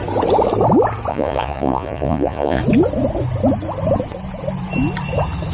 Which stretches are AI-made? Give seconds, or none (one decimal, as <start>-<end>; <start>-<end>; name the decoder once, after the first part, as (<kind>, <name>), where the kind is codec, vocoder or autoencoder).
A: 1.1-2.6 (vocoder, Vocos)